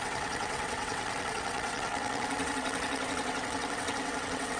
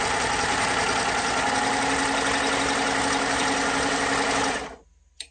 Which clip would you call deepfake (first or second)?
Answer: first